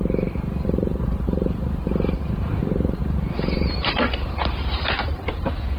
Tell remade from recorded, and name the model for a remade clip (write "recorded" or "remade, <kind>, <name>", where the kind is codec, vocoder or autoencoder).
remade, vocoder, BigVGAN v2